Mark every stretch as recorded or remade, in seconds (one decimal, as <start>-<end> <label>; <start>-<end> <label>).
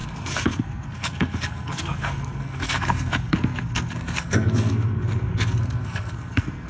0.0-6.7 remade